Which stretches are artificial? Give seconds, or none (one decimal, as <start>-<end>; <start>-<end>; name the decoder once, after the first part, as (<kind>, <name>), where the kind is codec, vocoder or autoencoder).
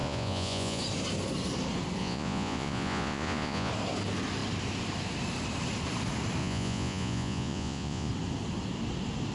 0.0-0.8 (vocoder, Vocos); 2.0-3.7; 6.4-8.1